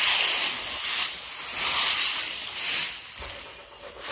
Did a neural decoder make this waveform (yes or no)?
no